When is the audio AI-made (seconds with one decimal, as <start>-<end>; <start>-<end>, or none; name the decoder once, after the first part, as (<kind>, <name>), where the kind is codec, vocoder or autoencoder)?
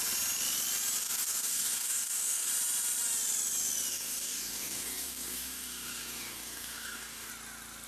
1.0-2.5 (codec, DAC); 3.9-7.3